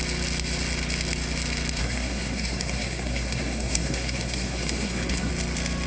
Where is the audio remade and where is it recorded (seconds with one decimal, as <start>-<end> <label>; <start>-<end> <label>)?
0.0-1.8 recorded; 1.8-5.3 remade; 5.3-5.9 recorded